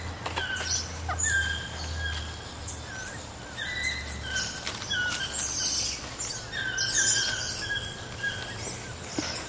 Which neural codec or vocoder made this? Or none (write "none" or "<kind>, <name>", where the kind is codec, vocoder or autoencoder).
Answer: none